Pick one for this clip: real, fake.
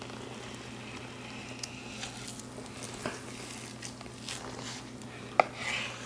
real